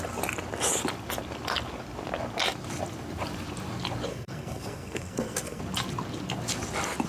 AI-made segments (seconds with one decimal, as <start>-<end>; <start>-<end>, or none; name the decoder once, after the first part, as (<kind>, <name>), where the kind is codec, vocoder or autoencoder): 4.1-5.6 (codec, SNAC)